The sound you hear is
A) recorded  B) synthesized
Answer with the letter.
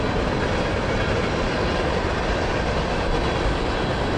A